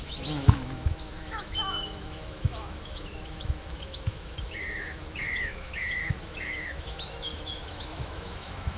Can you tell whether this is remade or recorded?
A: remade